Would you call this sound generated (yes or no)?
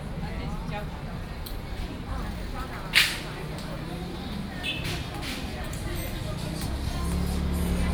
no